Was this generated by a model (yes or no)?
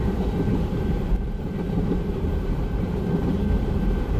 yes